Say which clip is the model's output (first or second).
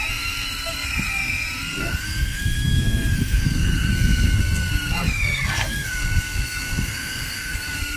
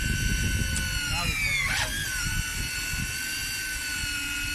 first